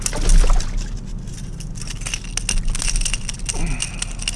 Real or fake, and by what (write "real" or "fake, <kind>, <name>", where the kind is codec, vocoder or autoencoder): real